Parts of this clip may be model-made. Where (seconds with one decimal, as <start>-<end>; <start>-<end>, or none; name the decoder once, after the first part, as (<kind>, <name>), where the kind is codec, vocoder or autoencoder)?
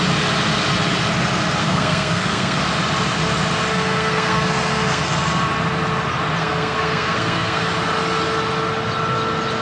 1.6-2.6 (codec, SNAC); 3.7-5.0; 6.4-7.6